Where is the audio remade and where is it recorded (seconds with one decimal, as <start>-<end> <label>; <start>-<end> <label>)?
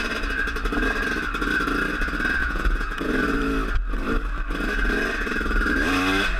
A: 0.0-2.4 recorded; 2.4-3.1 remade; 3.1-6.4 recorded